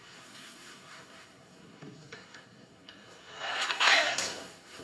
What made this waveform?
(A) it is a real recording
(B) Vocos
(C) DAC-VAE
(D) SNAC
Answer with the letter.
D